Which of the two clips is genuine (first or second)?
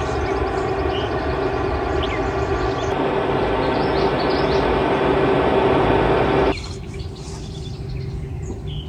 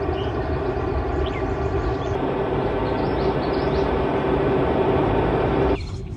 first